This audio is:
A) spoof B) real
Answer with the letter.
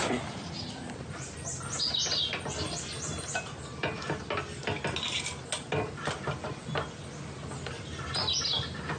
B